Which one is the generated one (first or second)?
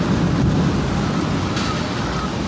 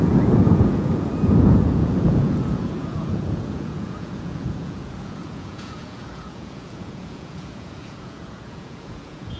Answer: second